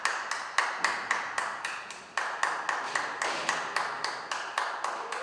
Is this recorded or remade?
recorded